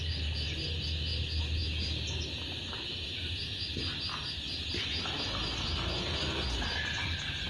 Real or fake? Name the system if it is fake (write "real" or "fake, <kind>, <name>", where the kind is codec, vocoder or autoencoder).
real